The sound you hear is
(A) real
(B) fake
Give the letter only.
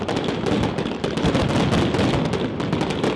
B